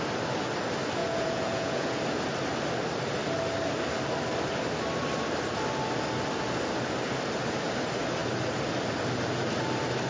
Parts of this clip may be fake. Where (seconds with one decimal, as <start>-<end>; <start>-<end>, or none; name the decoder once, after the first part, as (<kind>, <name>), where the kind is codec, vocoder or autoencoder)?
1.0-1.9 (vocoder, Vocos)